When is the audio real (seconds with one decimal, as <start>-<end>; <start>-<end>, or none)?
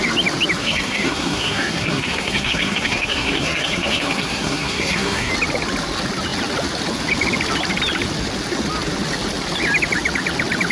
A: 0.0-0.6; 5.3-10.7